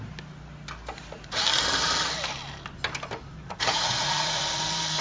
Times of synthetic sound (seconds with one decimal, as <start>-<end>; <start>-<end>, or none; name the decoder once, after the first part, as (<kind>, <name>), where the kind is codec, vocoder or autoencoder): 3.4-4.4 (vocoder, Vocos)